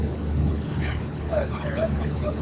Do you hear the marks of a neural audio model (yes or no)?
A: yes